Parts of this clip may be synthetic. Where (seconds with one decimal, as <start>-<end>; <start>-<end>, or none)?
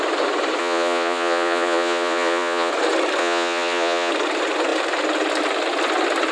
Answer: 0.6-2.7; 3.2-4.1